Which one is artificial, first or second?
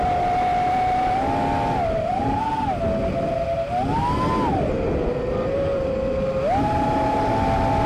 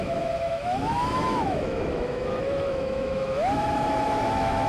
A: second